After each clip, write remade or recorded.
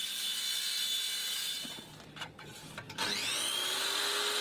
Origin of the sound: recorded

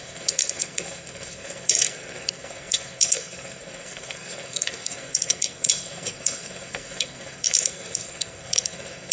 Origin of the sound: remade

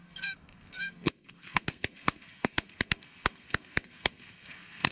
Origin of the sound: remade